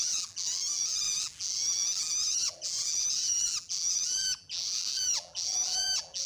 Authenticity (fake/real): fake